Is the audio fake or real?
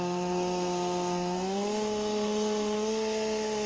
fake